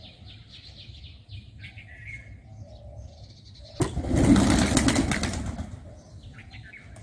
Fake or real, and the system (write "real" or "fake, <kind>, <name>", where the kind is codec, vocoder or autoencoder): real